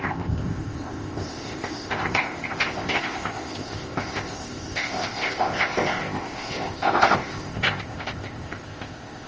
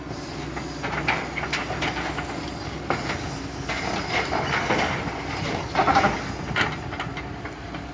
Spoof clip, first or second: first